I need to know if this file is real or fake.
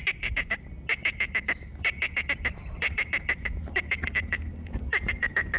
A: real